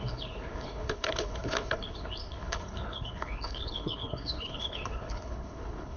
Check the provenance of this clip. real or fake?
fake